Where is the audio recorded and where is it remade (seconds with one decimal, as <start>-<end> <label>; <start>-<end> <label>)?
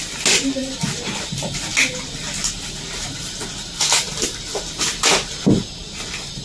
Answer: 0.0-6.4 recorded